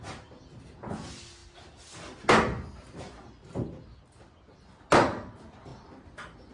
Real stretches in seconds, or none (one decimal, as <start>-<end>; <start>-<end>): 0.0-5.7